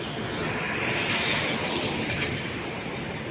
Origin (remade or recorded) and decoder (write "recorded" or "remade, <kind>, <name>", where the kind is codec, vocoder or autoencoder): recorded